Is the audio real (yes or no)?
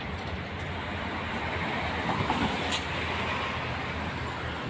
yes